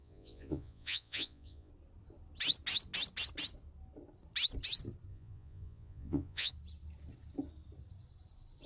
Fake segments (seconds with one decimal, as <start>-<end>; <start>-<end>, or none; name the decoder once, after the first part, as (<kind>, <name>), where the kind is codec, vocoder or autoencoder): 0.0-1.7 (vocoder, Vocos); 5.1-6.5